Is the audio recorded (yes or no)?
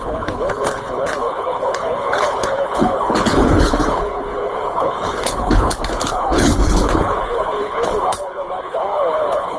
no